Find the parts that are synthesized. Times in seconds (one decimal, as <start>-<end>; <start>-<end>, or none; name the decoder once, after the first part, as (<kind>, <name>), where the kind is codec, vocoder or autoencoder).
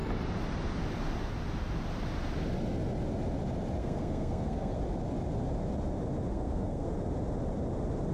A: 3.8-4.8 (codec, SNAC); 6.3-6.9